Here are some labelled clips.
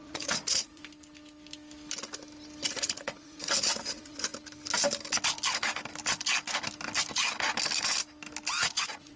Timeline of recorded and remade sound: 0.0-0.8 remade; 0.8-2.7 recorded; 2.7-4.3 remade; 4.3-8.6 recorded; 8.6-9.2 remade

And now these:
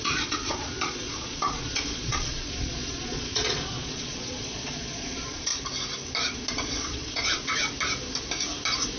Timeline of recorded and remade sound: 0.0-5.5 remade; 5.5-6.5 recorded; 6.5-7.6 remade; 7.6-9.0 recorded

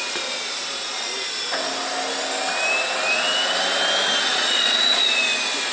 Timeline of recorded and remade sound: 0.0-4.3 recorded; 4.3-5.0 remade; 5.0-5.7 recorded

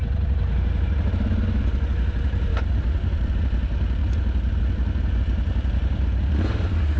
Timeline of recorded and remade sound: 0.0-7.0 recorded

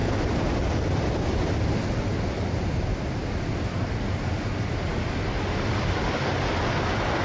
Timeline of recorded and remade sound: 0.0-7.2 recorded

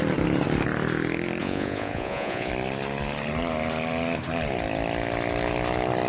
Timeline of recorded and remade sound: 0.0-1.4 recorded; 1.4-2.5 remade; 2.5-6.1 recorded

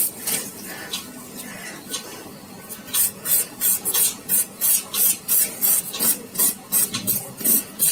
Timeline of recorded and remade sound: 0.0-2.9 recorded; 2.9-7.9 remade

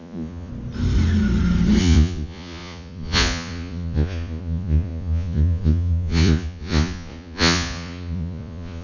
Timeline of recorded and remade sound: 0.0-0.5 remade; 0.5-1.8 recorded; 1.8-8.8 remade